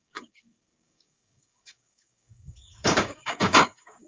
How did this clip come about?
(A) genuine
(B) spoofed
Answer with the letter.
B